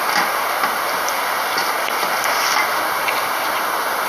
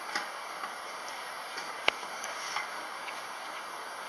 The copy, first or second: second